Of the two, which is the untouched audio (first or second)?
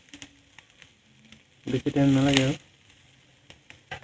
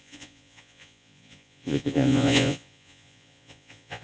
first